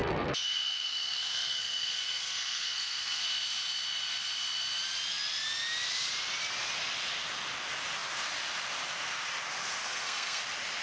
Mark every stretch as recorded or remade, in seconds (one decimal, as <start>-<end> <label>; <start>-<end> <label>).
0.0-3.2 remade; 3.2-9.8 recorded; 9.8-10.4 remade; 10.4-10.8 recorded